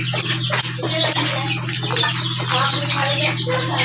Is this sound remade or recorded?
recorded